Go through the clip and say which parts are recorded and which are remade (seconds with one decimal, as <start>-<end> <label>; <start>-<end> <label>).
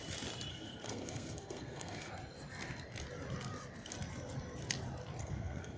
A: 0.0-0.5 recorded; 0.5-2.1 remade; 2.1-5.2 recorded; 5.2-5.8 remade